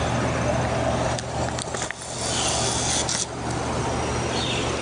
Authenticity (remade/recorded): recorded